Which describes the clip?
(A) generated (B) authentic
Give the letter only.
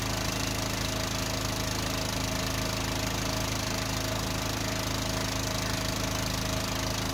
B